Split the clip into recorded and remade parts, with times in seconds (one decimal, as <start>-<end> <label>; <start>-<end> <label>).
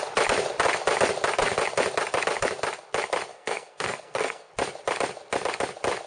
0.0-3.3 recorded; 3.3-4.5 remade; 4.5-6.1 recorded